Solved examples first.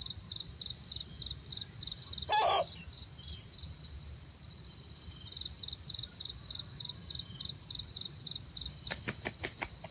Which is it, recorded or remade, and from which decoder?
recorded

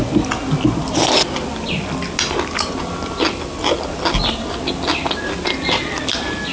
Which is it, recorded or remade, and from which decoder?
recorded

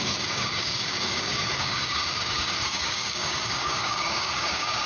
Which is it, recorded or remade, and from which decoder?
remade, codec, DAC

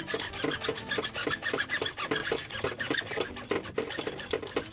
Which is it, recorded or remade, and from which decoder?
recorded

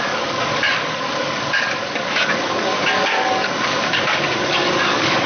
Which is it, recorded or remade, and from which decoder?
remade, codec, DAC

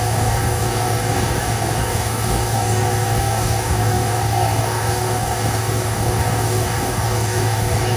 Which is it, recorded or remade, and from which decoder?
remade, codec, DAC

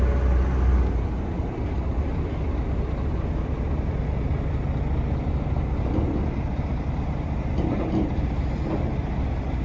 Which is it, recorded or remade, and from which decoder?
recorded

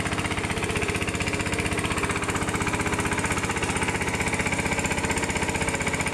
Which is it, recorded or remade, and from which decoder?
recorded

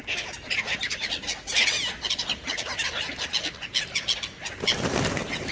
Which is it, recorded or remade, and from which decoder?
recorded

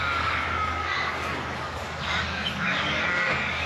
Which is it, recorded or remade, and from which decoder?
remade, codec, DAC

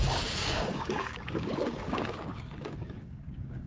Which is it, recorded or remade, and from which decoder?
remade, codec, DAC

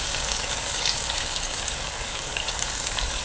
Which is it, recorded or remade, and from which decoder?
remade, codec, DAC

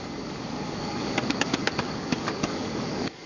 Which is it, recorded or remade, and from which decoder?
remade, codec, DAC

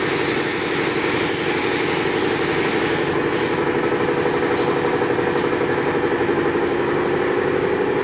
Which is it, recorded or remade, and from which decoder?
recorded